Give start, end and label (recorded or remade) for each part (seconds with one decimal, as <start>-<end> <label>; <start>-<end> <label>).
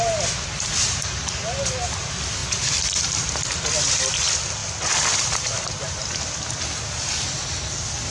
0.0-8.1 recorded